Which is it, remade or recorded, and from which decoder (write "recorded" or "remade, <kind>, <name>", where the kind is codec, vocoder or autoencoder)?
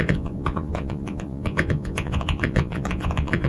remade, vocoder, Vocos